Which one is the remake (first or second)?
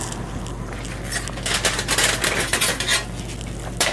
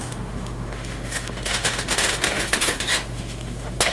second